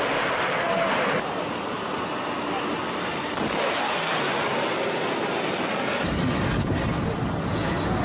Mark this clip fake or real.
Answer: real